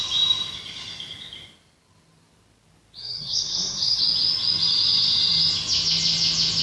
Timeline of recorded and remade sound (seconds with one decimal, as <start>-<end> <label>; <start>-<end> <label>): 0.0-3.0 recorded; 3.0-4.0 remade; 4.0-6.6 recorded